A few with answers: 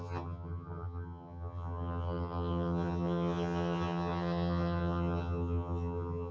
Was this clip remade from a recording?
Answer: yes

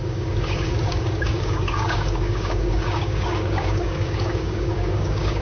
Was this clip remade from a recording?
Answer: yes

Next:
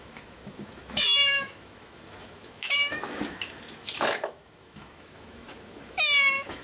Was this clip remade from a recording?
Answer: yes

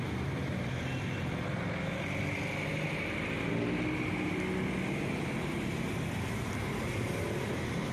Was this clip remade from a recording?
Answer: no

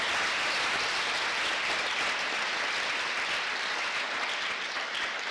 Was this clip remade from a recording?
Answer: no